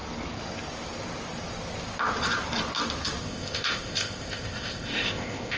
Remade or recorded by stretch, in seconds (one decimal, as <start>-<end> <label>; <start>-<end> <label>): 0.0-3.2 recorded; 3.2-5.6 remade